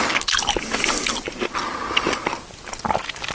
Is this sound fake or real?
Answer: real